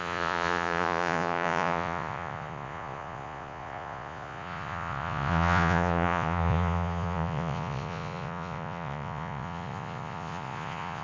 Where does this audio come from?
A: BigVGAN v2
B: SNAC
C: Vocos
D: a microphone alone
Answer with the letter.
C